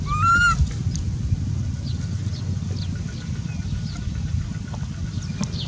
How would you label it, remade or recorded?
recorded